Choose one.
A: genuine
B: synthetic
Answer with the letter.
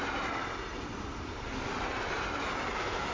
A